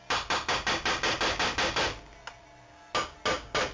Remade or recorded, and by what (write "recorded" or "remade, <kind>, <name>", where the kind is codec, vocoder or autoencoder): recorded